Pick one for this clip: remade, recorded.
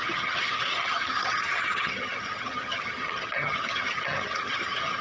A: remade